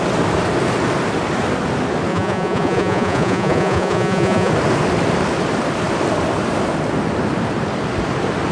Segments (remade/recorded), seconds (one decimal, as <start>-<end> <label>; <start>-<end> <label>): 0.0-2.1 recorded; 2.1-4.5 remade; 4.5-8.5 recorded